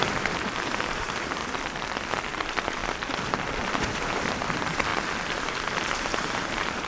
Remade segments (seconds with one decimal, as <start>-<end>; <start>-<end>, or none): 0.0-1.4; 2.3-2.8; 3.4-4.9; 6.0-6.9